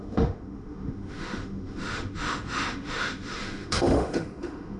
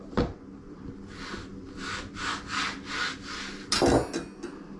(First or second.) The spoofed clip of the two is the first